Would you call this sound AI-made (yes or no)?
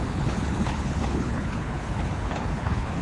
yes